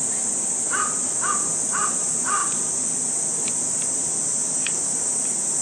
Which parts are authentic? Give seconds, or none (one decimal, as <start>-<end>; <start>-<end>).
0.0-5.6